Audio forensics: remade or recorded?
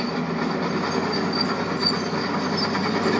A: recorded